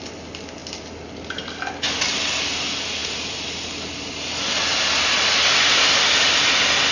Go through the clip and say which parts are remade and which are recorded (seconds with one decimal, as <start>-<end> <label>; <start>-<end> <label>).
0.0-6.9 recorded